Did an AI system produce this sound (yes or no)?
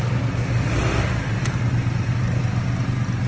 no